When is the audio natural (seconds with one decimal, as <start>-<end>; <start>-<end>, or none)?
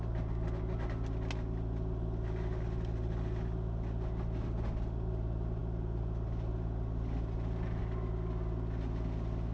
0.0-9.5